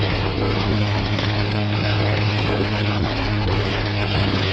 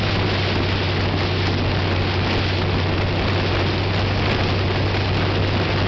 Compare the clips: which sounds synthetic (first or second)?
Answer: first